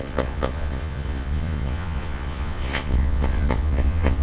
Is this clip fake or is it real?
fake